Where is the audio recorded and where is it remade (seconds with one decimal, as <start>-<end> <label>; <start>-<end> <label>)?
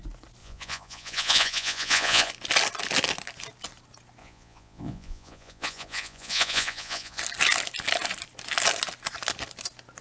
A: 0.0-0.4 recorded; 0.4-2.3 remade; 2.3-4.2 recorded; 4.2-7.2 remade; 7.2-10.0 recorded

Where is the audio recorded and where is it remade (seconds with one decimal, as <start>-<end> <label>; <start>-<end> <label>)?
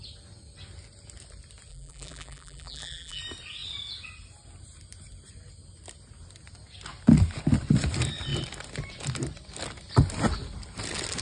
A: 0.0-1.7 recorded; 1.7-3.2 remade; 3.2-11.2 recorded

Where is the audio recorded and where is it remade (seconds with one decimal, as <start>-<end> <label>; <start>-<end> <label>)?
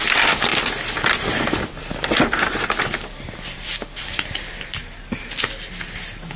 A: 0.0-4.8 remade; 4.8-6.4 recorded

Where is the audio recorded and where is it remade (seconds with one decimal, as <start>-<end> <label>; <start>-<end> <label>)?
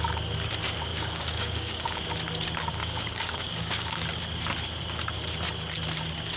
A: 0.0-0.9 recorded; 0.9-2.0 remade; 2.0-2.8 recorded; 2.8-4.2 remade; 4.2-6.4 recorded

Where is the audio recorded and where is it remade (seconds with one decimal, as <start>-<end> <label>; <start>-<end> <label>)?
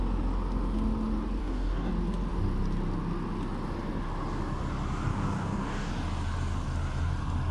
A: 0.0-1.4 recorded; 1.4-1.9 remade; 1.9-5.1 recorded; 5.1-5.9 remade; 5.9-7.5 recorded